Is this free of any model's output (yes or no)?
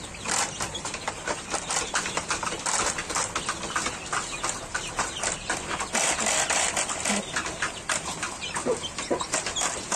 yes